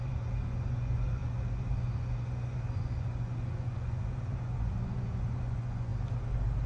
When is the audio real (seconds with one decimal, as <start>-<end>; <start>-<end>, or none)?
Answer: 5.9-6.7